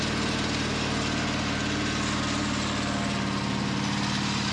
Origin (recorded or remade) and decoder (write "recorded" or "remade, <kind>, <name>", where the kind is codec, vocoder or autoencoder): recorded